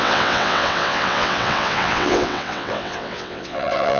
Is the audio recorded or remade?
remade